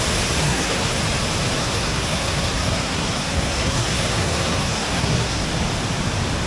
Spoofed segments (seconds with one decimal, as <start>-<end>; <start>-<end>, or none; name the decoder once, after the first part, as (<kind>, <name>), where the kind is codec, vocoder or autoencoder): 0.4-1.0 (codec, SNAC); 1.6-5.5